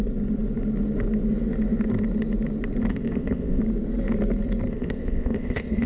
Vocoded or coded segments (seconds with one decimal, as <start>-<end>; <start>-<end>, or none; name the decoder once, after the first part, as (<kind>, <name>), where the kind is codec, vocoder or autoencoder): 2.9-3.6 (codec, ZipCodec); 4.7-5.9